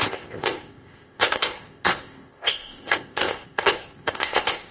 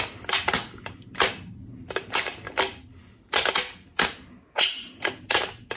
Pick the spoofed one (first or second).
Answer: first